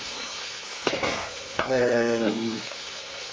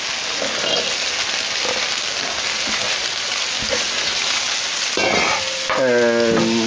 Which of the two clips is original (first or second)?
second